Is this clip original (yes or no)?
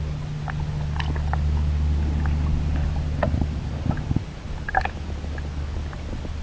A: yes